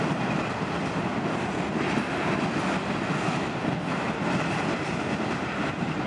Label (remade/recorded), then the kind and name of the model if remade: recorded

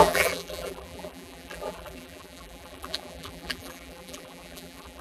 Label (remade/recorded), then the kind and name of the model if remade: remade, vocoder, BigVGAN v2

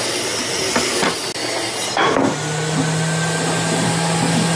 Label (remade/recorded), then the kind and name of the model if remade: recorded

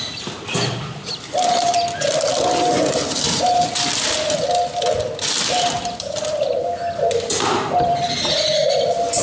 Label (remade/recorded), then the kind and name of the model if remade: recorded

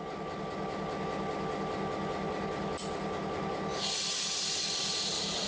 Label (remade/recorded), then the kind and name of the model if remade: recorded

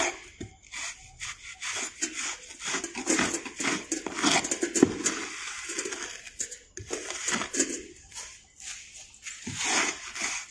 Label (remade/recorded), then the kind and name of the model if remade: recorded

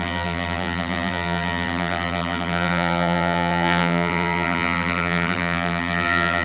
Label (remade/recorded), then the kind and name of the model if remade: remade, vocoder, BigVGAN v2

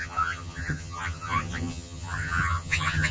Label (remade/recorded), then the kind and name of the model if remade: remade, vocoder, HiFi-GAN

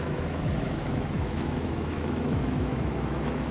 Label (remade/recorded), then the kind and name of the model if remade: remade, autoencoder, DAC-VAE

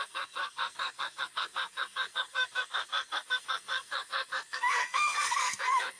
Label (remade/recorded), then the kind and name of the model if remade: remade, codec, SNAC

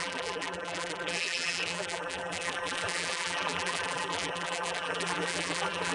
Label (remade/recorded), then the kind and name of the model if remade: remade, vocoder, BigVGAN v2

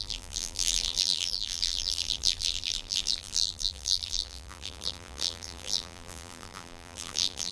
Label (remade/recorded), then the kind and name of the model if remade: remade, vocoder, BigVGAN v2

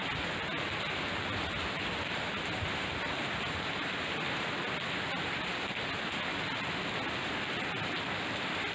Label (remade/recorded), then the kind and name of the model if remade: recorded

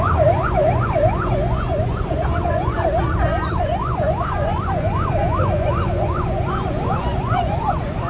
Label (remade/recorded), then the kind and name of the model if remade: remade, vocoder, Vocos